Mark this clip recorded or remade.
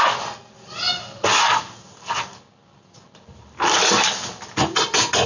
recorded